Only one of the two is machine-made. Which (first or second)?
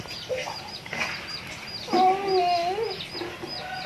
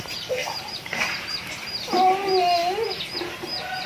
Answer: second